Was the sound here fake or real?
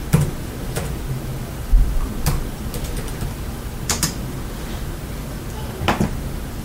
real